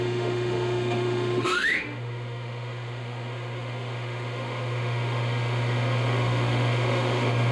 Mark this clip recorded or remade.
remade